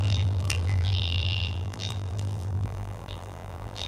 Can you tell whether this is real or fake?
fake